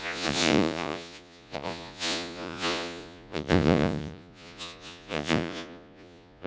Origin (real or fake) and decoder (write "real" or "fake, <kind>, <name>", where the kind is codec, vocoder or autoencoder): fake, vocoder, Vocos